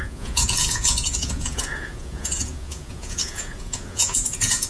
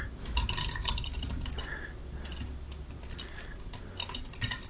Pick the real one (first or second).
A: second